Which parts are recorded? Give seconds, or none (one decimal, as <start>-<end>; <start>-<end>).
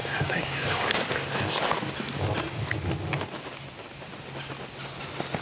1.0-5.4